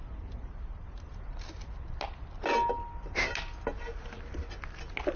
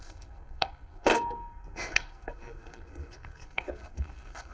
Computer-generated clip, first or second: second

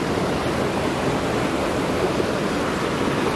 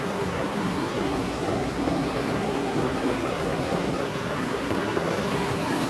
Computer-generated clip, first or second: second